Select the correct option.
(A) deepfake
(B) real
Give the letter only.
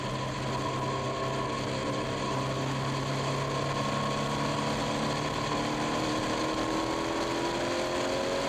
B